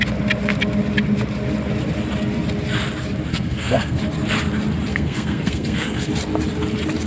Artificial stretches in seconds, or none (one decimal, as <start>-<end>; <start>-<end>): 3.3-4.0; 4.9-6.1